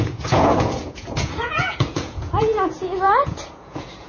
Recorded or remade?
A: remade